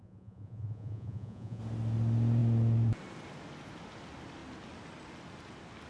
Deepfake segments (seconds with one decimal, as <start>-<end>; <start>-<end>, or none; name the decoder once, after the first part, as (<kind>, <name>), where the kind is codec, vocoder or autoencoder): 0.0-1.6 (vocoder, Vocos)